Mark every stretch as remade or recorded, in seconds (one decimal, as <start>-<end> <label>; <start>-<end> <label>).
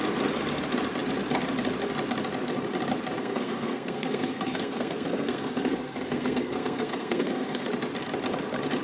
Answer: 0.0-3.2 recorded; 3.2-7.7 remade; 7.7-8.8 recorded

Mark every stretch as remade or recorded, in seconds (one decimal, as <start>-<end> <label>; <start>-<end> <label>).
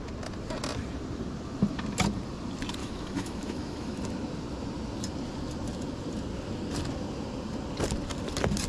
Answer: 0.0-2.8 recorded; 2.8-4.0 remade; 4.0-8.7 recorded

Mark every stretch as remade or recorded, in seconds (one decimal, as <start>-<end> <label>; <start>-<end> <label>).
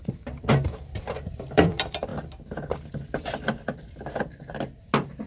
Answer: 0.0-2.1 remade; 2.1-4.8 recorded; 4.8-5.3 remade